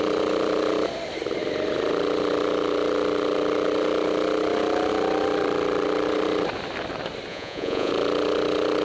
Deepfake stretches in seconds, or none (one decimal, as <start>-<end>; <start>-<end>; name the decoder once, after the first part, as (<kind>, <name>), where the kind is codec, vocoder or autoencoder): 7.3-7.9 (vocoder, Vocos)